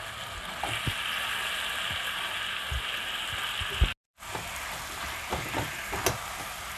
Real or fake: real